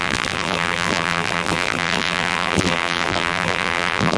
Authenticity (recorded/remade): remade